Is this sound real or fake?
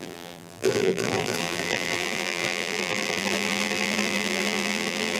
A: fake